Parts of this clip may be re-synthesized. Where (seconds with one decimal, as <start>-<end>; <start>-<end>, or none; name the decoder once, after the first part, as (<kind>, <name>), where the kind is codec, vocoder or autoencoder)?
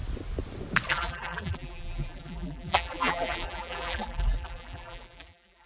0.9-5.7 (vocoder, BigVGAN v2)